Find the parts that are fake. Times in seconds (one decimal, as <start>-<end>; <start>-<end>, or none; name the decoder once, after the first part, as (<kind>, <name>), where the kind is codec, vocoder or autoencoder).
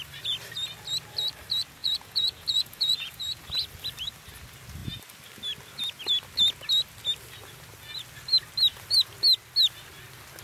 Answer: 1.8-3.4 (vocoder, Vocos)